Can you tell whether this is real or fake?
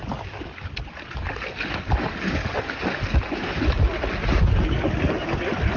real